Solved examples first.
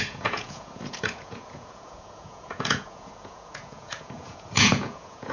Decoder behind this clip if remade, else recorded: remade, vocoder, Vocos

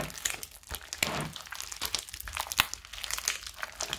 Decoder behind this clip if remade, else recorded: recorded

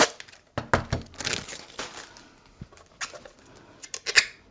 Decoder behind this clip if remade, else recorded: recorded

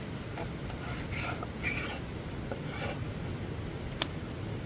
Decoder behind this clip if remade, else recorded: recorded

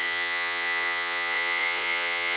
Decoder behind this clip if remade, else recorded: remade, vocoder, Vocos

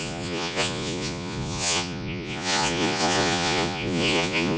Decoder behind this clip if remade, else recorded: remade, vocoder, Vocos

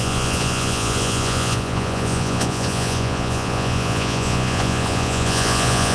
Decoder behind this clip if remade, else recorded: remade, vocoder, Vocos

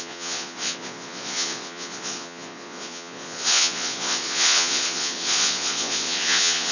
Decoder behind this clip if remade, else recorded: remade, vocoder, Vocos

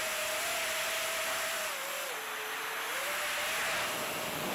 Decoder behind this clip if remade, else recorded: recorded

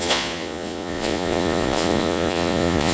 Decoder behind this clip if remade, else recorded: remade, vocoder, Vocos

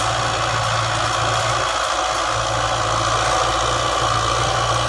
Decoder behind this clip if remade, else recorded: recorded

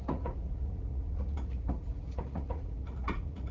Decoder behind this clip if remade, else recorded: remade, vocoder, Vocos